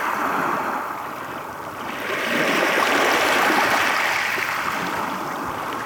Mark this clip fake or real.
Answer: fake